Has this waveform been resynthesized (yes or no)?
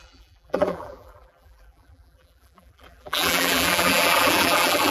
yes